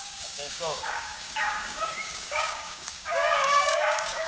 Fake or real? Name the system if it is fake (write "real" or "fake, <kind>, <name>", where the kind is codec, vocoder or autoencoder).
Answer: fake, codec, DAC